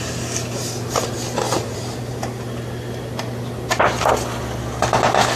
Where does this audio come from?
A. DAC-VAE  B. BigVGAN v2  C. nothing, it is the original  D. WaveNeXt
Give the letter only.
C